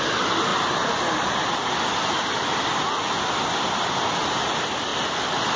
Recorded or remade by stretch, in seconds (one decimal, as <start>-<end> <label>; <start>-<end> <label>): 0.0-5.6 recorded